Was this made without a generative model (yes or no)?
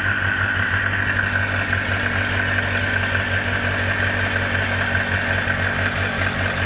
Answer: yes